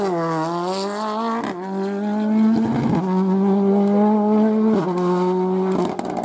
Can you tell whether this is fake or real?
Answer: real